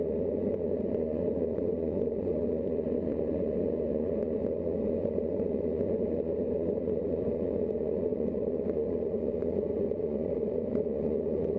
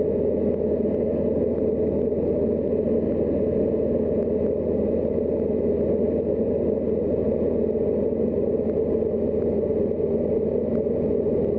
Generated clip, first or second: first